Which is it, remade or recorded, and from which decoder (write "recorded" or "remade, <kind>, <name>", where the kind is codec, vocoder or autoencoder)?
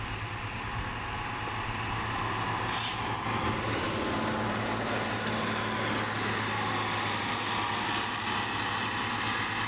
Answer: recorded